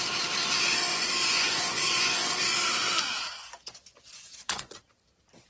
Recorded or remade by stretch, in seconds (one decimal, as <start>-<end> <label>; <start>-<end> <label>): 0.0-0.9 recorded; 0.9-2.4 remade; 2.4-3.3 recorded; 3.3-4.8 remade; 4.8-5.5 recorded